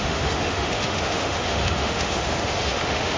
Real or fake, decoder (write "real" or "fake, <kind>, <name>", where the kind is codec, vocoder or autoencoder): fake, autoencoder, DAC-VAE